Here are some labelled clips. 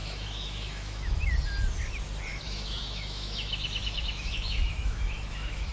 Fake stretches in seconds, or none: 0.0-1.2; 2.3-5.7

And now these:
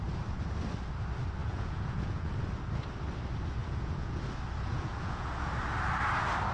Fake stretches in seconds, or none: 1.4-2.3; 3.6-4.2; 4.7-5.5

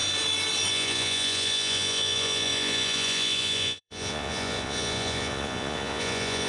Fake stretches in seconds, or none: 0.7-6.5